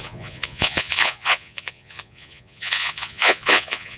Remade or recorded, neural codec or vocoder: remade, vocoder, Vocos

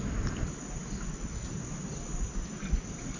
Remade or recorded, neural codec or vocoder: recorded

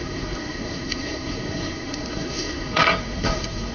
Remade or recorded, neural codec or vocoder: remade, codec, SNAC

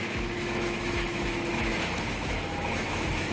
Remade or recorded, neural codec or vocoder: remade, autoencoder, DAC-VAE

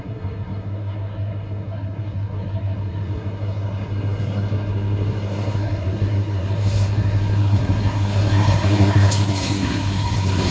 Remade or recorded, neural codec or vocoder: remade, codec, SNAC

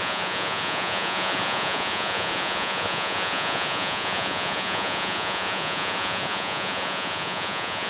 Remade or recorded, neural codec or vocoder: remade, vocoder, Vocos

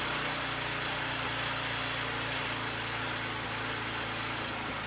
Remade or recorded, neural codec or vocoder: recorded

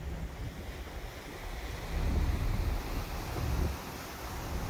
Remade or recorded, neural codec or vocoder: recorded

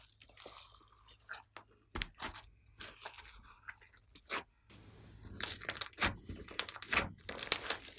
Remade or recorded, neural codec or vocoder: recorded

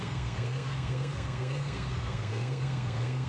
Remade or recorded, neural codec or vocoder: remade, codec, SNAC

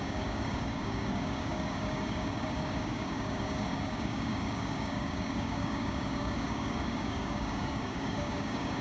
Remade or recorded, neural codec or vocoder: remade, codec, DAC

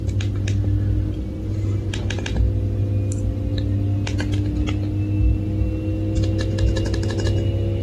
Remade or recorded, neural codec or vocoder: recorded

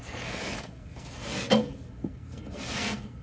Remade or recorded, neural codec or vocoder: remade, codec, SNAC